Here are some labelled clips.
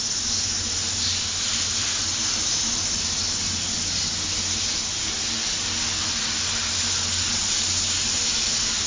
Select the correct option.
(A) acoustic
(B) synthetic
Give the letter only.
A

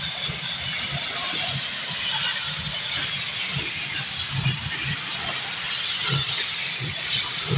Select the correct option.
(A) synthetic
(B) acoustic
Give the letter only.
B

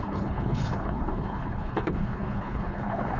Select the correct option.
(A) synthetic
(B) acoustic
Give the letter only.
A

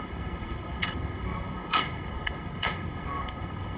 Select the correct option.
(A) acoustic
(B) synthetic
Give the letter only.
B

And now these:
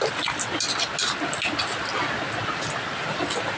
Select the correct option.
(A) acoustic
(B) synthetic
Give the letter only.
A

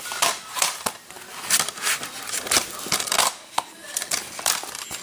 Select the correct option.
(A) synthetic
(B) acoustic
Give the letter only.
B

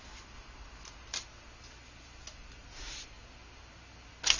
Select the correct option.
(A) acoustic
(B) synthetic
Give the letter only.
A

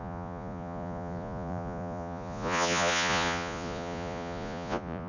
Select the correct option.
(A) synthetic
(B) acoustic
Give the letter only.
A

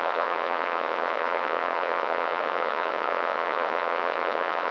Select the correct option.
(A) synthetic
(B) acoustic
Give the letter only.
A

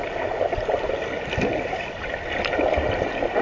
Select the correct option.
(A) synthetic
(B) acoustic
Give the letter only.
B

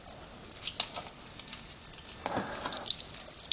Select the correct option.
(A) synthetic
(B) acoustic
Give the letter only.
B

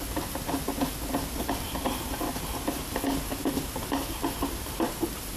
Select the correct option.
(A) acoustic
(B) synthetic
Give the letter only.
A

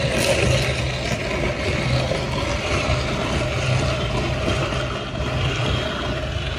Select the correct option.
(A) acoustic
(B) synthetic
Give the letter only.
A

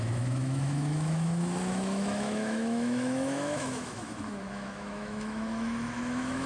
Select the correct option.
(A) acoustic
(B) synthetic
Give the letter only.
B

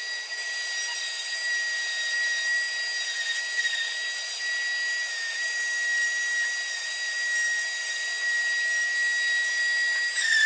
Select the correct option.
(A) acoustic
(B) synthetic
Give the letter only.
A